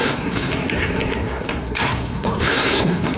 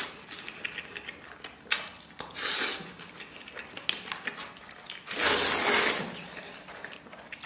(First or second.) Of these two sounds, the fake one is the first